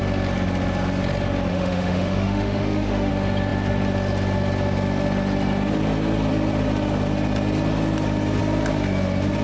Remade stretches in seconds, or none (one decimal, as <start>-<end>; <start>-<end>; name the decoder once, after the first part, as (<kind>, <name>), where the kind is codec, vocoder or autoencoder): 1.5-3.1 (autoencoder, DAC-VAE)